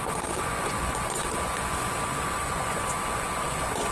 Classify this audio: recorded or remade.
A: remade